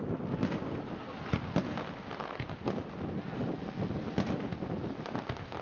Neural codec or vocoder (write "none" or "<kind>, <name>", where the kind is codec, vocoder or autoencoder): none